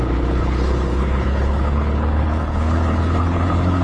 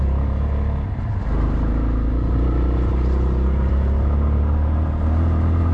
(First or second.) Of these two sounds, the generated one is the first